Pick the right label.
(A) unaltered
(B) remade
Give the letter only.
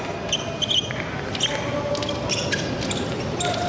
A